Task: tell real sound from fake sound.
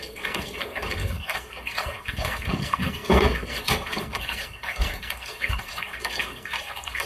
fake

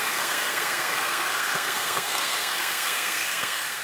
fake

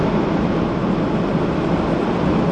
real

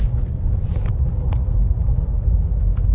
real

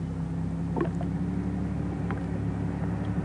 real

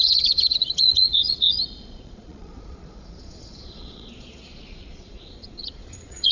fake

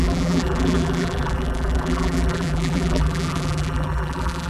fake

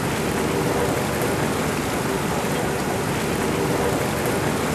real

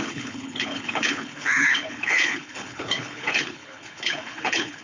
fake